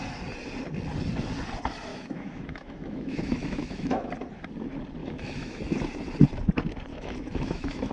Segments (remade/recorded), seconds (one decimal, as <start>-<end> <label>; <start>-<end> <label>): 0.0-1.9 recorded; 1.9-4.1 remade; 4.1-5.0 recorded; 5.0-5.6 remade; 5.6-6.9 recorded; 6.9-7.9 remade